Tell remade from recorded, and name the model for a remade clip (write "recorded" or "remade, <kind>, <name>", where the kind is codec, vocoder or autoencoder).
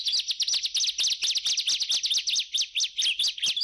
recorded